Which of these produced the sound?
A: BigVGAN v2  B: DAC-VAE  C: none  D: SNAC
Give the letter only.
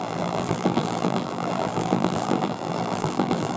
A